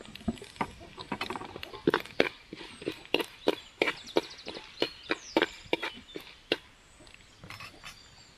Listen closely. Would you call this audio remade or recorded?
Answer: recorded